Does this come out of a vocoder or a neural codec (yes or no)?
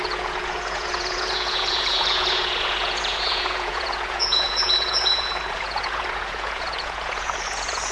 yes